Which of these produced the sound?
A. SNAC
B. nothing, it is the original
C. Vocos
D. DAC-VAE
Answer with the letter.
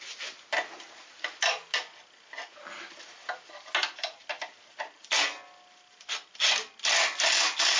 B